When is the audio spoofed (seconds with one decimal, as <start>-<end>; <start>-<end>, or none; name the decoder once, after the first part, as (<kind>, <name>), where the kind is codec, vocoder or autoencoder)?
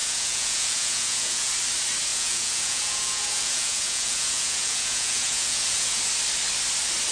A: 0.0-1.5 (vocoder, Vocos); 2.1-6.0